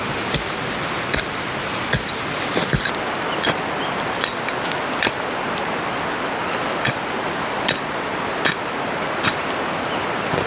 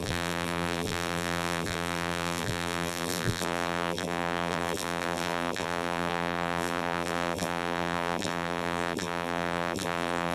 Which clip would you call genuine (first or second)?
first